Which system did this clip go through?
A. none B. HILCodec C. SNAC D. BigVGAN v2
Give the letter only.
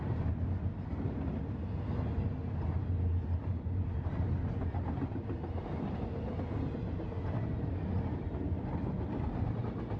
A